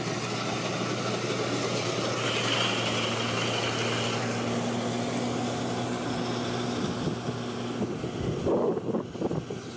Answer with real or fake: real